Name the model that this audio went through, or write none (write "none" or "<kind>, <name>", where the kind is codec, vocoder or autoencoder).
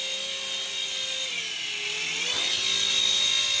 none